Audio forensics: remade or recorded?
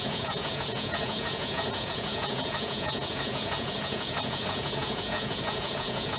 remade